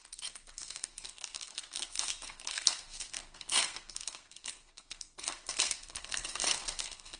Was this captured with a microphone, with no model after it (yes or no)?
no